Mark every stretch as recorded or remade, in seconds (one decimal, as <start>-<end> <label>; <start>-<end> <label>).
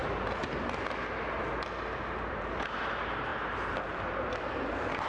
0.0-2.3 recorded; 2.3-5.1 remade